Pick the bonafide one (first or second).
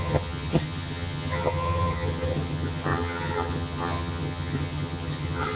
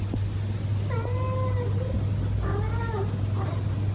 second